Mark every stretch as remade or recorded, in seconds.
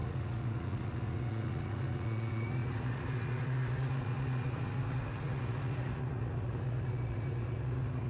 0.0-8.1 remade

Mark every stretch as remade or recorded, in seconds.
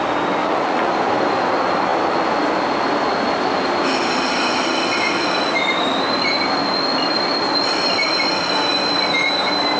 0.0-0.4 recorded; 0.4-0.9 remade; 0.9-9.8 recorded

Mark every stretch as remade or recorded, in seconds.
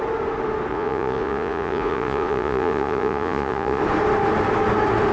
0.0-0.7 recorded; 0.7-3.8 remade; 3.8-5.1 recorded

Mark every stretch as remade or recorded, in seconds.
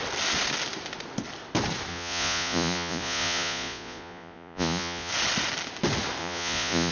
0.0-1.9 recorded; 1.9-5.1 remade; 5.1-6.2 recorded; 6.2-6.9 remade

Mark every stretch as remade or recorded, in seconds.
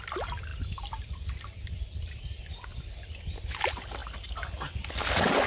0.0-5.5 recorded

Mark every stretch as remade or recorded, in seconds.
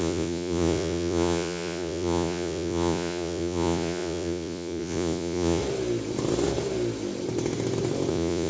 0.0-5.6 remade; 5.6-8.1 recorded; 8.1-8.5 remade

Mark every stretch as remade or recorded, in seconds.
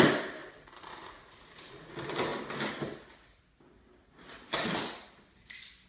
0.0-0.4 recorded; 0.4-1.9 remade; 1.9-5.9 recorded